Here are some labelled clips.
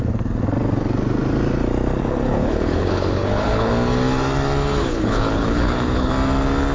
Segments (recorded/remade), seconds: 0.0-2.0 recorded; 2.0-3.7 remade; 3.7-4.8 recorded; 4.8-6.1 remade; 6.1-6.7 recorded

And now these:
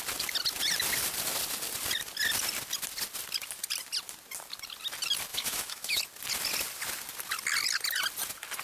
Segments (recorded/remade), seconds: 0.0-5.3 recorded; 5.3-6.0 remade; 6.0-8.6 recorded

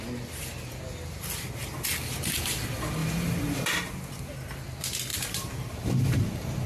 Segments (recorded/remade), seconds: 0.0-3.0 recorded; 3.0-3.9 remade; 3.9-5.1 recorded; 5.1-6.2 remade; 6.2-6.7 recorded

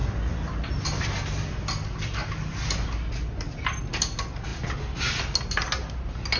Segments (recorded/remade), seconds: 0.0-6.4 recorded

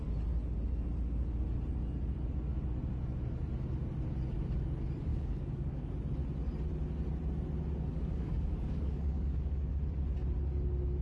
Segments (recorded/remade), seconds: 0.0-5.1 recorded; 5.1-5.9 remade; 5.9-7.9 recorded; 7.9-9.7 remade; 9.7-11.0 recorded

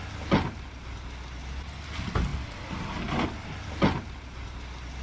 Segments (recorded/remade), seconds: 0.0-5.0 recorded